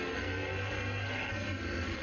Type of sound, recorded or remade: remade